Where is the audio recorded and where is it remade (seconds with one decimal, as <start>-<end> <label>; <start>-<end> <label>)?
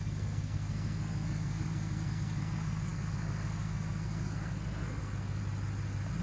0.0-5.4 remade; 5.4-6.2 recorded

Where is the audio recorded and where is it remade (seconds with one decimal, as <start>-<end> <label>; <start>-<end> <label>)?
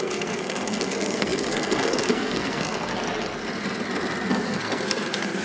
0.0-2.9 remade; 2.9-4.3 recorded; 4.3-5.4 remade